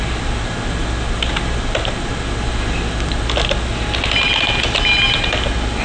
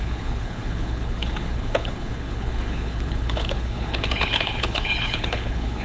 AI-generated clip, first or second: second